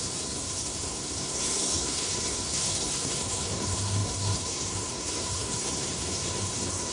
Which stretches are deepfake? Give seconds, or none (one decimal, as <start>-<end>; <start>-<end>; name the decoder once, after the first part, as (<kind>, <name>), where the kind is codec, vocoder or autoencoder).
0.0-6.9 (codec, SNAC)